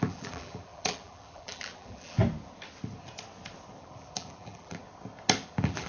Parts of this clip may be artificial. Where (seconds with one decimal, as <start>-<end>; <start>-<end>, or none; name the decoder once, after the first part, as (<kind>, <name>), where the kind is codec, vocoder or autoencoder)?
0.0-2.2 (vocoder, BigVGAN v2); 3.8-4.8; 5.4-5.9